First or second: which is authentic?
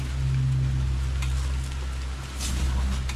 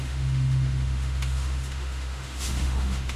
first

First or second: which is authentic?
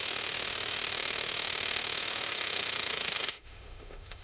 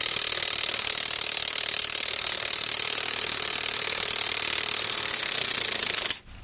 second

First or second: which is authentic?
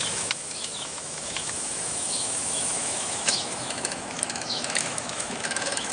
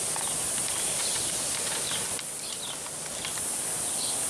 second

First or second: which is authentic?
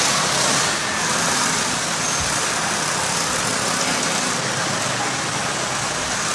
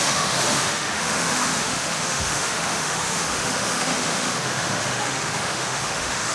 first